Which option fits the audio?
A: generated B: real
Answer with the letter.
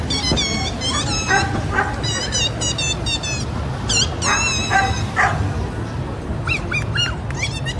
B